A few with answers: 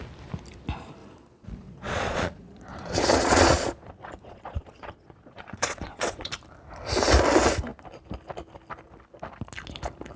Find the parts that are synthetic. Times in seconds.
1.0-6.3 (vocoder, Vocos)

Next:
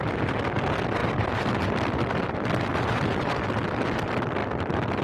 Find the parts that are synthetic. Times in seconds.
1.0-3.8 (vocoder, BigVGAN v2)

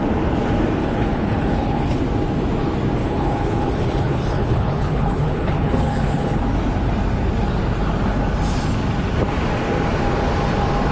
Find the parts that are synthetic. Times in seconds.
0.8-2.0 (codec, HILCodec); 3.0-6.4

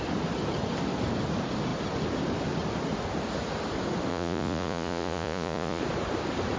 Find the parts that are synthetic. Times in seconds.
4.1-5.8 (vocoder, Vocos)

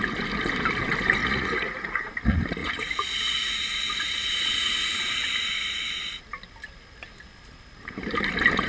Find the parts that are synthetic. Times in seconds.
1.2-2.1 (vocoder, Vocos); 2.6-5.0

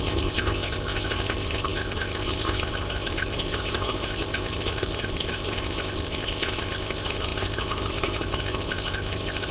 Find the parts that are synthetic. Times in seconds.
0.0-9.5 (codec, ZipCodec)